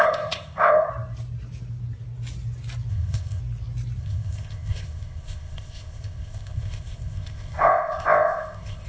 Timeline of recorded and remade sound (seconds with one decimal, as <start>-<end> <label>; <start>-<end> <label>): 0.0-0.9 remade; 0.9-2.9 recorded; 2.9-3.4 remade; 3.4-4.0 recorded; 4.0-8.9 remade